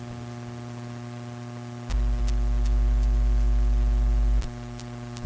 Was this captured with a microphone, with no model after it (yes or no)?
yes